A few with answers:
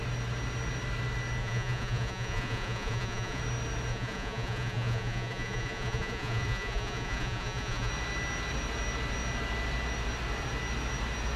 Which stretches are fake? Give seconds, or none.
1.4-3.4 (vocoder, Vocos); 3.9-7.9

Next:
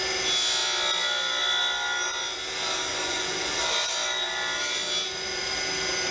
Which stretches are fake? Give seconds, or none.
2.9-3.5 (vocoder, Vocos)

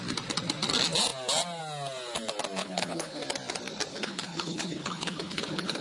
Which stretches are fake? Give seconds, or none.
2.6-3.2 (codec, HILCodec); 3.9-5.8